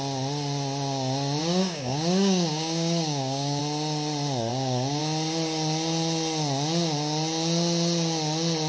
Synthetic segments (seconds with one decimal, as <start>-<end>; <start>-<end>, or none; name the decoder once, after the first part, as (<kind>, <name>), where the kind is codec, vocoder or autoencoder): 1.4-3.6 (codec, DAC); 4.5-5.0